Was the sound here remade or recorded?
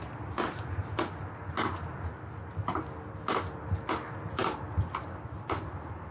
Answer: recorded